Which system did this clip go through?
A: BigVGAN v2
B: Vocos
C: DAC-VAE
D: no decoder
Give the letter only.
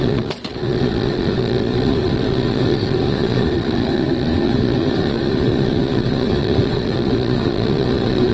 B